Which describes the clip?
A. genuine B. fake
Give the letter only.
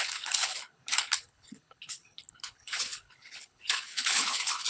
B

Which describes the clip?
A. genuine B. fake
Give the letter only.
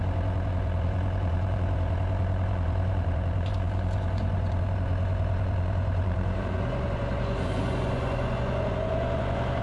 B